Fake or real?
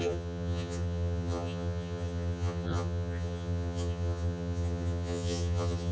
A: fake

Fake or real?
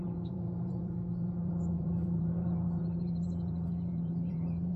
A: fake